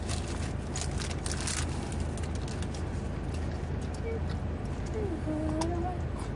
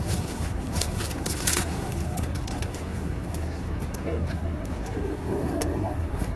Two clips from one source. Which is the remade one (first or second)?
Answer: second